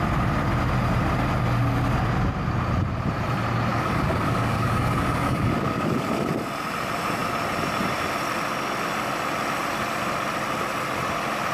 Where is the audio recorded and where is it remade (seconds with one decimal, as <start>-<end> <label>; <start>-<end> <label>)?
0.0-3.7 recorded; 3.7-6.3 remade; 6.3-11.5 recorded